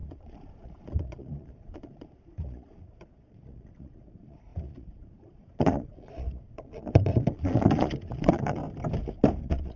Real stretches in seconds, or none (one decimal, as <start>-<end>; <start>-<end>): 8.6-9.4